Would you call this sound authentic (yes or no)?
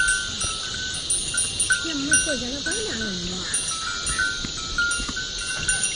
yes